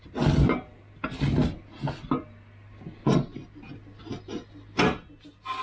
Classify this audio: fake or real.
real